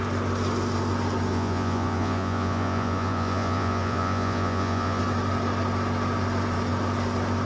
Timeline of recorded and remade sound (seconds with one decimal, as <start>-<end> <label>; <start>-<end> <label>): 0.0-1.3 recorded; 1.3-5.0 remade; 5.0-7.5 recorded